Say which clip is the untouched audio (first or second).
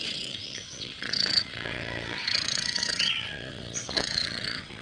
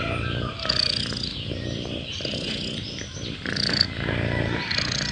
second